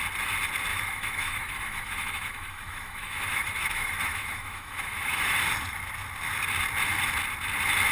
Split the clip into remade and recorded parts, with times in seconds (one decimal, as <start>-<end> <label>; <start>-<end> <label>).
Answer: 0.0-0.7 recorded; 0.7-5.4 remade; 5.4-7.9 recorded